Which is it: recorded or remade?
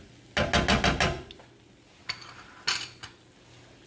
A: recorded